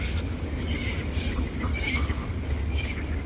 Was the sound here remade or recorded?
remade